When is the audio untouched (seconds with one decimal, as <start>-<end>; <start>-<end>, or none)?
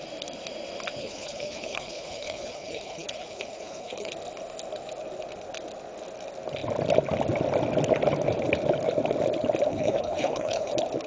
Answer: 0.0-1.0; 4.1-9.7; 10.7-11.1